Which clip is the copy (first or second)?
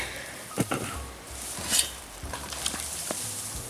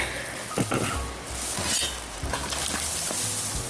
first